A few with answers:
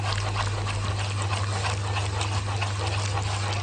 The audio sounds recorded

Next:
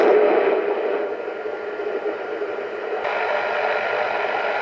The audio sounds remade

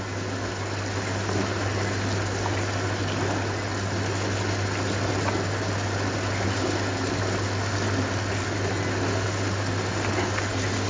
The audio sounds recorded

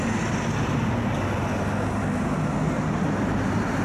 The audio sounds recorded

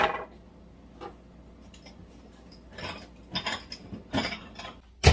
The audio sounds recorded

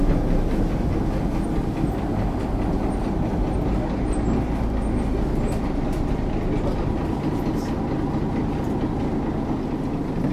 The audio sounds recorded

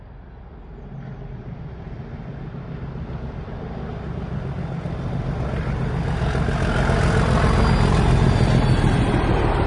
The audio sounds recorded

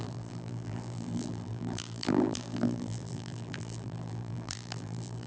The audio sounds remade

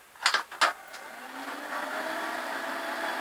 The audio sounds recorded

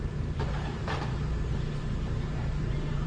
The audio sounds remade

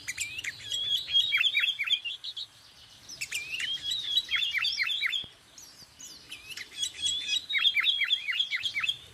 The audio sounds remade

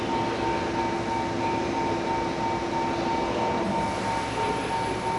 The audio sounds recorded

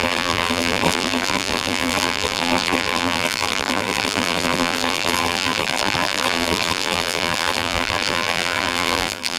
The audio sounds remade